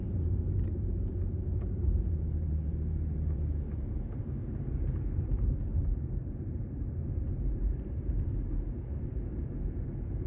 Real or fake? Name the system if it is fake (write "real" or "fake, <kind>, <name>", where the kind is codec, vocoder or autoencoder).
fake, vocoder, BigVGAN v2